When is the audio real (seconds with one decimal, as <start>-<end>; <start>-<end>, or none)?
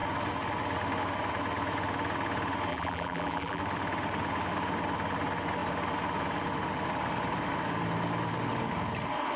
0.0-2.7; 3.6-9.4